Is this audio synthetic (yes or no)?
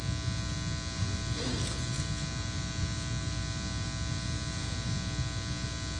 no